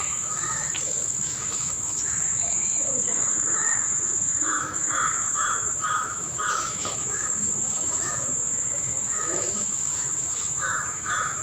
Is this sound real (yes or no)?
no